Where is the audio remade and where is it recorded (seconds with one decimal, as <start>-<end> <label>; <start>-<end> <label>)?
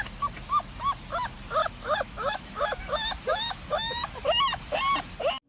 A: 0.0-1.6 recorded; 1.6-2.8 remade; 2.8-3.7 recorded; 3.7-4.5 remade; 4.5-5.5 recorded